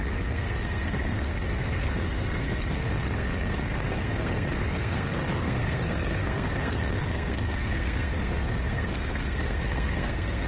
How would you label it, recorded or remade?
remade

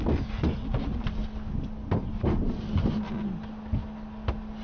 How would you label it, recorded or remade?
recorded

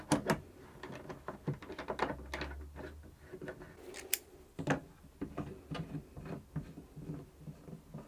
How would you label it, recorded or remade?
recorded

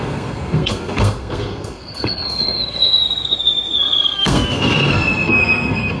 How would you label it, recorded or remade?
remade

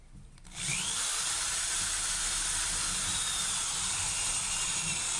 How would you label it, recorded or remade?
recorded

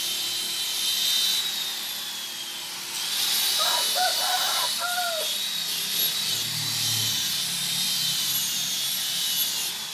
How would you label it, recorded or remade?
recorded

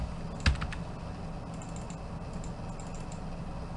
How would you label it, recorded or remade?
recorded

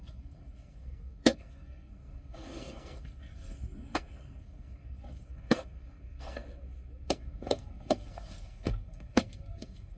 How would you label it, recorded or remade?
remade